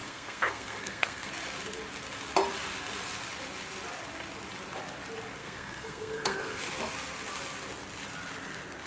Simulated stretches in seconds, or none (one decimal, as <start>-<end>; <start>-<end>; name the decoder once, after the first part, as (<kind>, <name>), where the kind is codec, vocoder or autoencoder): 0.0-1.3 (codec, SNAC); 5.4-6.6